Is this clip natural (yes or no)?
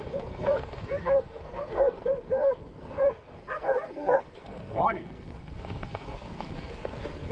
no